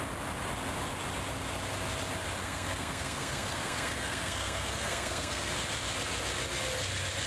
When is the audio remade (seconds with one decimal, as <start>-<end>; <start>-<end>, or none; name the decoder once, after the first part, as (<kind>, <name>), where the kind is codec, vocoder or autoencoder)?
2.4-5.5 (codec, SNAC)